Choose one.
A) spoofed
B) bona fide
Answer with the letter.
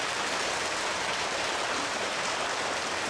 B